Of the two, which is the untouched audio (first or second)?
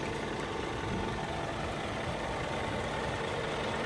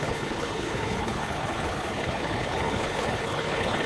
first